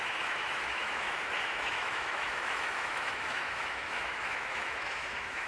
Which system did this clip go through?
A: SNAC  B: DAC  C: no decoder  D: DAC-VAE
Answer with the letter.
D